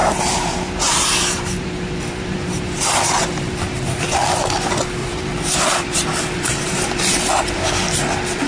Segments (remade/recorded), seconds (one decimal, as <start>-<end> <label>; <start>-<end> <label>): 0.0-4.0 remade; 4.0-5.0 recorded; 5.0-7.7 remade; 7.7-8.5 recorded